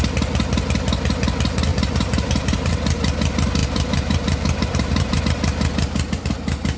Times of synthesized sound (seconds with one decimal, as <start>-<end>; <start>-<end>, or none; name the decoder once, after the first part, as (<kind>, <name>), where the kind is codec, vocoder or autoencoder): 1.7-2.7 (vocoder, BigVGAN v2); 3.6-5.2